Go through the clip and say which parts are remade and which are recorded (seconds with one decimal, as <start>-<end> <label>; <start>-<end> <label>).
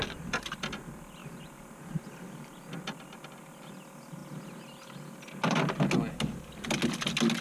0.0-1.2 recorded; 1.2-2.6 remade; 2.6-7.4 recorded